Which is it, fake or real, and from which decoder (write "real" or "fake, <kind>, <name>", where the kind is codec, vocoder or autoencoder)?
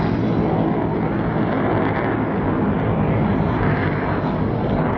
real